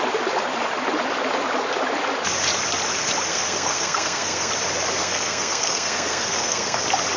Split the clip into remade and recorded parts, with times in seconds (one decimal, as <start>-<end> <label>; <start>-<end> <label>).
0.0-3.3 recorded; 3.3-4.5 remade; 4.5-5.0 recorded; 5.0-6.8 remade; 6.8-7.2 recorded